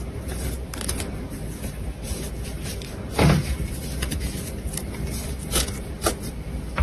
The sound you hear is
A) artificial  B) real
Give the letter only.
A